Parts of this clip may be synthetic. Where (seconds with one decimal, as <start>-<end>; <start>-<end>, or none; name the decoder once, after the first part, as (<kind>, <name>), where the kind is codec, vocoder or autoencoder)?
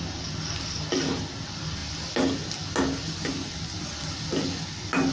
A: none